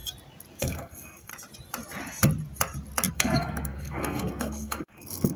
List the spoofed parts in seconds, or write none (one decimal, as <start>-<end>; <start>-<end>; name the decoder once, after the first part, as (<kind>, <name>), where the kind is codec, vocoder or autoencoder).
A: 0.6-1.3 (codec, SNAC); 3.1-5.4